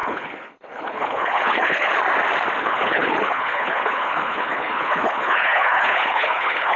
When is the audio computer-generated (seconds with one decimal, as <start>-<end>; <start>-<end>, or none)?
0.0-1.9; 2.6-6.8